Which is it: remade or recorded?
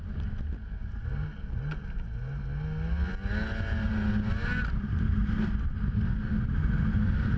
recorded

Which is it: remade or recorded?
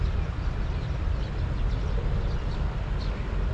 recorded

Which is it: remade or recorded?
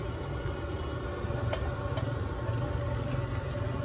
recorded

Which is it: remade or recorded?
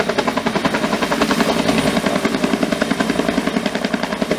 recorded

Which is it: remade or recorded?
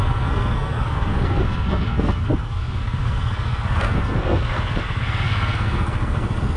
remade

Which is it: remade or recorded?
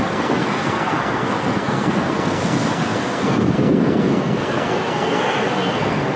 remade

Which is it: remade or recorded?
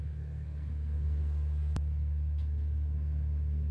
remade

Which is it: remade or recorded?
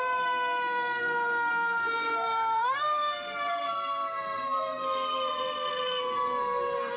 remade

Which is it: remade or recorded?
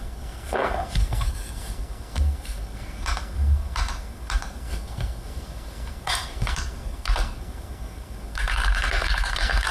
remade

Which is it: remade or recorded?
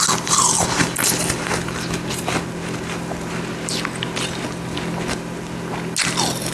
recorded